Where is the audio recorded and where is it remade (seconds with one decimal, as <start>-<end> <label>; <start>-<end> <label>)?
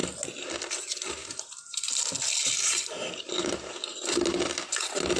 0.0-1.2 recorded; 1.2-2.0 remade; 2.0-2.4 recorded; 2.4-3.9 remade; 3.9-5.2 recorded